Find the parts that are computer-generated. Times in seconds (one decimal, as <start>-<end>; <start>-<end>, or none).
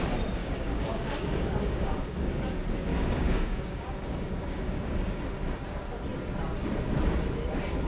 0.4-2.5; 2.9-5.2